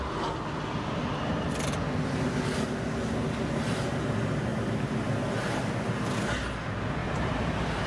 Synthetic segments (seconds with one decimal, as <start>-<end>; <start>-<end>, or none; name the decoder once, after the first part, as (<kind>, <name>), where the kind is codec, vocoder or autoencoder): 7.0-7.9 (vocoder, BigVGAN v2)